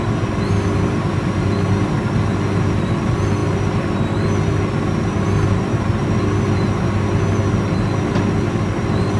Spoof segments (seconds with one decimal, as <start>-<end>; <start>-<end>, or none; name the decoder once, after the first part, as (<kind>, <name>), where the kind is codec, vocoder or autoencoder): none